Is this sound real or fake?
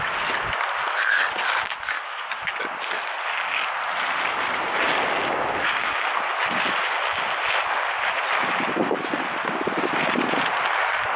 real